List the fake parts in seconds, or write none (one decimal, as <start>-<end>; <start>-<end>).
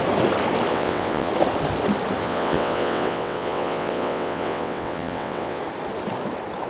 0.7-1.3; 2.2-5.6